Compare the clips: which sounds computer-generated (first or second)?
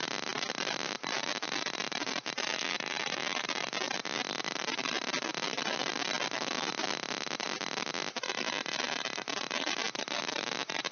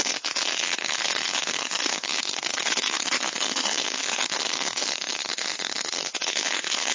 second